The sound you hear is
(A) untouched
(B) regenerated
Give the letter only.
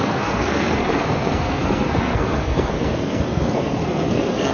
B